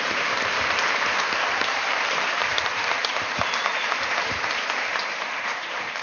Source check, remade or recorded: remade